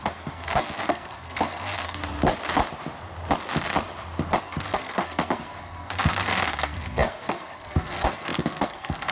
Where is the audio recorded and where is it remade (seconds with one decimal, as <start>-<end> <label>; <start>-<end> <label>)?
0.0-2.0 remade; 2.0-4.4 recorded; 4.4-9.1 remade